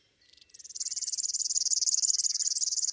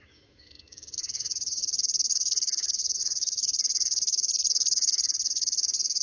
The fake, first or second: second